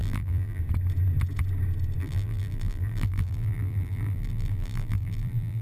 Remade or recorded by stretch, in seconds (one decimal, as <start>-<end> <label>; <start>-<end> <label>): 0.0-0.6 remade; 0.6-2.0 recorded; 2.0-5.6 remade